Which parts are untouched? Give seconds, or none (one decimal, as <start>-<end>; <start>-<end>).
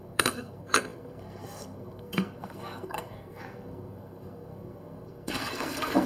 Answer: none